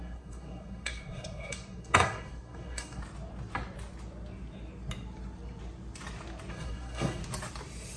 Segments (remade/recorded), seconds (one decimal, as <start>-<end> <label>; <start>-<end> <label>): 0.0-3.0 remade; 3.0-6.5 recorded; 6.5-7.2 remade; 7.2-8.0 recorded